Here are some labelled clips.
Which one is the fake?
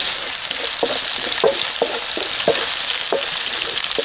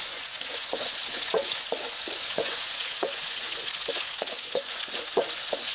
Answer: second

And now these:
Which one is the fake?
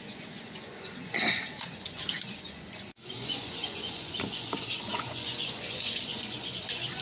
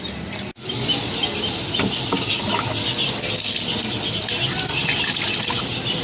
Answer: first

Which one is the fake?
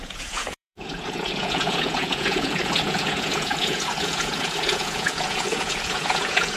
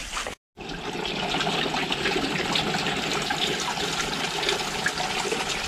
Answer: first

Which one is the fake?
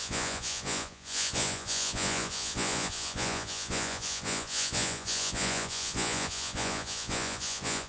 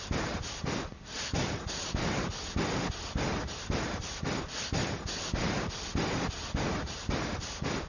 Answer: first